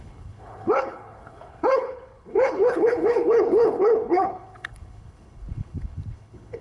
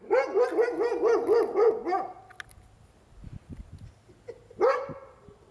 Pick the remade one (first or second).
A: first